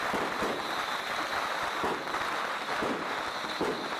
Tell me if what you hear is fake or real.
real